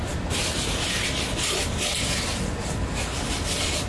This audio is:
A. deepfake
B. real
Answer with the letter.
B